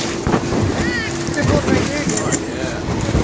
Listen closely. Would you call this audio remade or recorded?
recorded